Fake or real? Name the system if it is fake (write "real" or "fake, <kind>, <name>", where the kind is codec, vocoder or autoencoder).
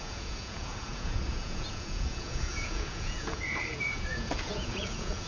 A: fake, vocoder, Vocos